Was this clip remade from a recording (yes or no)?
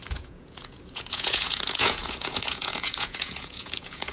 yes